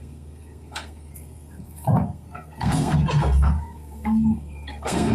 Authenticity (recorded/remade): remade